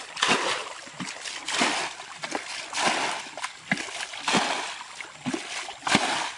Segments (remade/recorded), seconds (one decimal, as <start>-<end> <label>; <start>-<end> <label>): 0.0-6.4 recorded